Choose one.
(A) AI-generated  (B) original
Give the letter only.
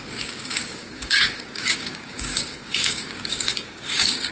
A